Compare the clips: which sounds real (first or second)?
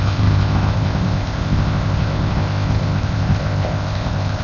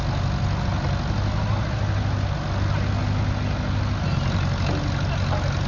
second